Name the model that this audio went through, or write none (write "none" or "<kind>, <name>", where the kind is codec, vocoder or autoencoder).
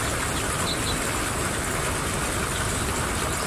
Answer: none